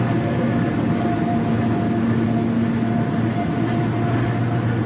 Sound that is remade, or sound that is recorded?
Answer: recorded